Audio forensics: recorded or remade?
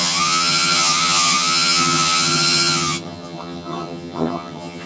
remade